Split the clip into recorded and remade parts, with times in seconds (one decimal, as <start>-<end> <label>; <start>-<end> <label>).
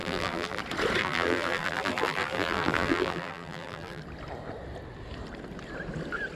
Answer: 0.0-0.6 remade; 0.6-1.0 recorded; 1.0-4.0 remade; 4.0-6.4 recorded